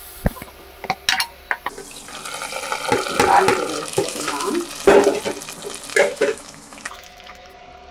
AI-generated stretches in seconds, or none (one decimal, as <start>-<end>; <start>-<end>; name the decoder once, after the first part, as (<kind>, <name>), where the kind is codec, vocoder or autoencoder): 3.9-4.5 (autoencoder, DAC-VAE); 5.9-7.5